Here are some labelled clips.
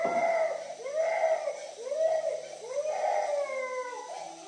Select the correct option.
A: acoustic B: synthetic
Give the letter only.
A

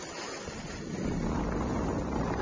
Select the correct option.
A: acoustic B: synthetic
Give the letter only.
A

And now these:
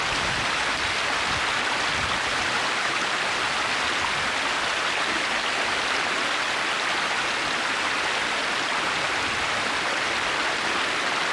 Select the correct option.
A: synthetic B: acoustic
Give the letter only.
B